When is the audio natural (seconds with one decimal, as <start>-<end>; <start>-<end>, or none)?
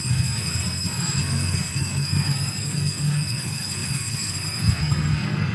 none